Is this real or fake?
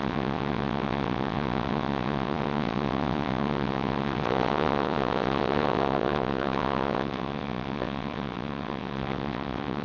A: fake